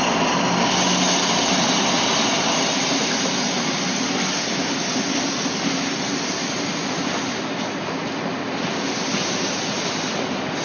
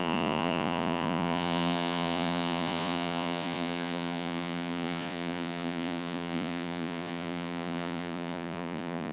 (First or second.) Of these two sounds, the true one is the first